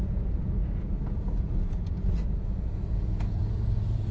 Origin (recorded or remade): remade